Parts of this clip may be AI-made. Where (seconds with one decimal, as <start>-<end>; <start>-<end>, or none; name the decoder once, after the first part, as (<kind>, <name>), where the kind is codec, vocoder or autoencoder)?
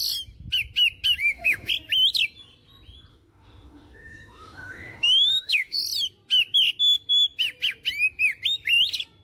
1.2-1.7 (autoencoder, DAC-VAE); 3.1-5.8